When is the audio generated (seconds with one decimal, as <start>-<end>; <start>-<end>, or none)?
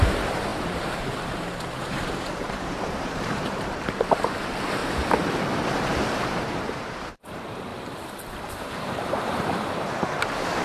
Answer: 0.0-4.8; 5.8-7.7; 8.5-10.6